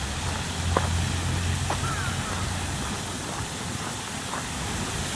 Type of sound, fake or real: real